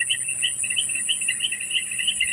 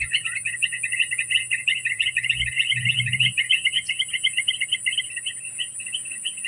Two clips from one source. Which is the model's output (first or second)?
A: second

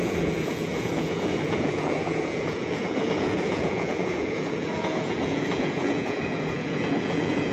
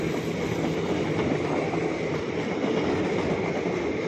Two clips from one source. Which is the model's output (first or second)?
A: first